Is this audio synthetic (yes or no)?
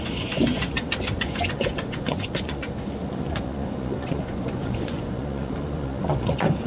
yes